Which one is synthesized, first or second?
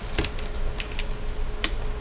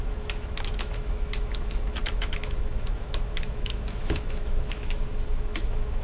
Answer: second